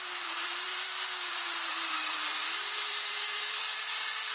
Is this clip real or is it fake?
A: fake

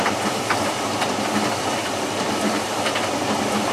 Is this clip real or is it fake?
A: fake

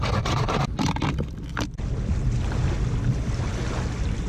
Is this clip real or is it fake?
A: real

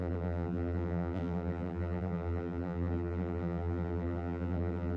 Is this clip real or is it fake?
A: fake